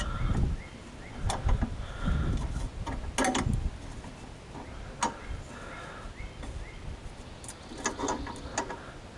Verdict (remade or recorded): recorded